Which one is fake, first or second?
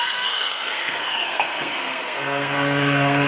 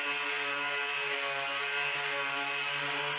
first